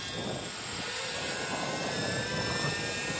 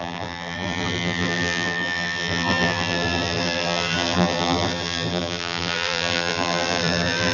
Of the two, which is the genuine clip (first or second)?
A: first